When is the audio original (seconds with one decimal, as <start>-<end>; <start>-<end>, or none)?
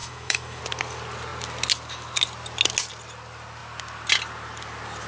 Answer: 0.6-5.1